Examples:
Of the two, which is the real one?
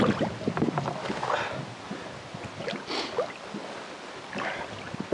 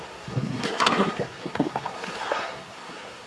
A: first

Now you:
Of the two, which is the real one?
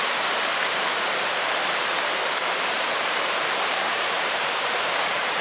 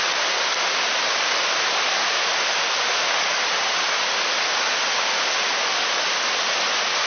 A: second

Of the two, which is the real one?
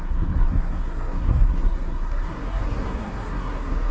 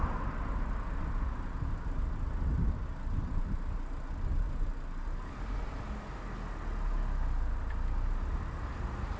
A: second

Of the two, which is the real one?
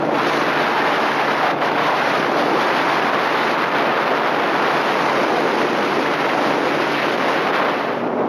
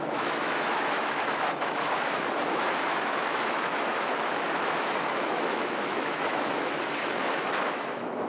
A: first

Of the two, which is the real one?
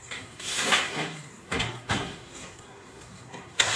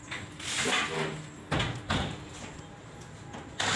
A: second